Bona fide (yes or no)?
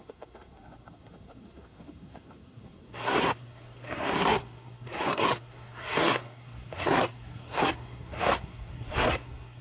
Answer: no